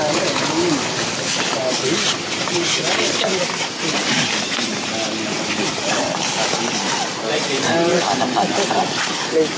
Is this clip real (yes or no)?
yes